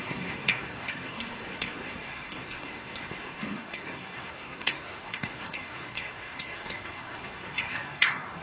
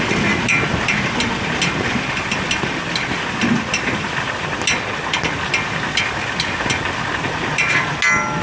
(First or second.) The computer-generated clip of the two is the first